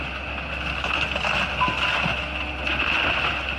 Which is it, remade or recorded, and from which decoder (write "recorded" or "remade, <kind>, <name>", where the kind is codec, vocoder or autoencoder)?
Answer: recorded